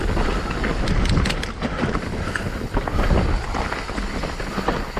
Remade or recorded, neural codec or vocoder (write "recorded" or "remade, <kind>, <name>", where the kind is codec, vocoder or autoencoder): recorded